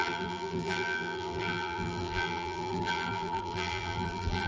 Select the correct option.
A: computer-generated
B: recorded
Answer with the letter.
A